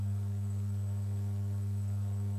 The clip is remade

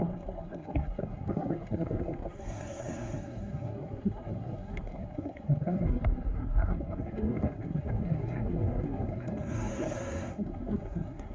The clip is remade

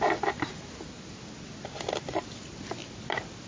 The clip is recorded